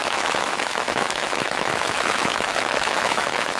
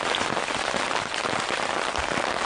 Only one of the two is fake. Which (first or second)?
first